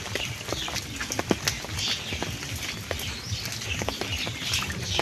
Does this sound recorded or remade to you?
recorded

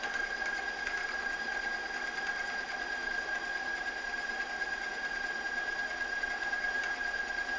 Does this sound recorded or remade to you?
recorded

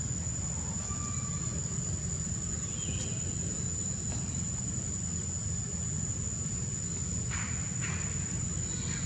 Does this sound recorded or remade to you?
recorded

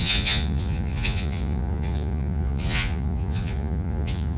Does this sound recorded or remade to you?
remade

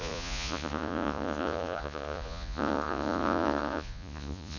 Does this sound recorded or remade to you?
remade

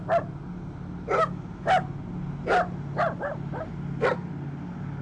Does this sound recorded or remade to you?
recorded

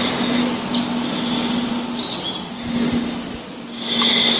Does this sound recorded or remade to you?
recorded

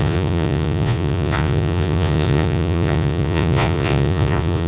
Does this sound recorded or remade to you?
remade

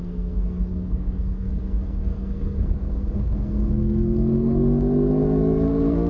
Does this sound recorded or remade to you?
remade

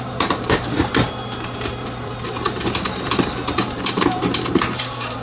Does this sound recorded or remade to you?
remade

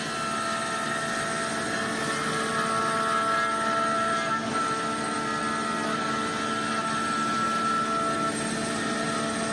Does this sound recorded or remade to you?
recorded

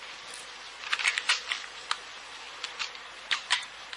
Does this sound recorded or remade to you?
recorded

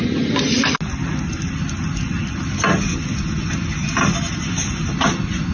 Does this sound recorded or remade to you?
recorded